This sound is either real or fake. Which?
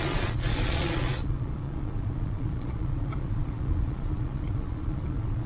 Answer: fake